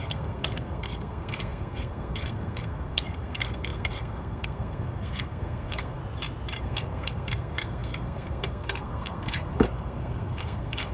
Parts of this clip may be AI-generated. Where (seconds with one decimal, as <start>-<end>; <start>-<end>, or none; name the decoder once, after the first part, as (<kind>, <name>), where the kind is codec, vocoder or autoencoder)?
0.0-6.0 (codec, SNAC); 6.6-10.9